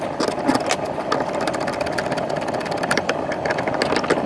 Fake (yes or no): no